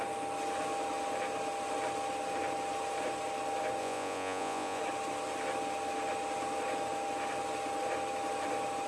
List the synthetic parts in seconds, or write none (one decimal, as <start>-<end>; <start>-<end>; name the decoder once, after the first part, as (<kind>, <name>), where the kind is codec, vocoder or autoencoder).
3.8-4.8 (vocoder, Vocos)